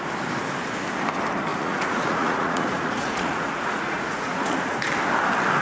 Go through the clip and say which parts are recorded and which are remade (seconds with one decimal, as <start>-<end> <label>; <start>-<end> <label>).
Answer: 0.0-1.5 recorded; 1.5-4.9 remade; 4.9-5.6 recorded